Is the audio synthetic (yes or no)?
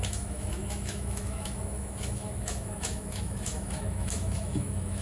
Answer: yes